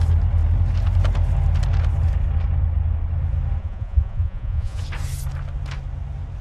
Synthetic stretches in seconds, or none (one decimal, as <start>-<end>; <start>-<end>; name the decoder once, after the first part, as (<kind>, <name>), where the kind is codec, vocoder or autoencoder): 3.6-4.8 (vocoder, Vocos)